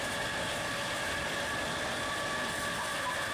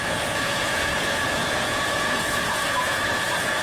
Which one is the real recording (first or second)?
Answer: first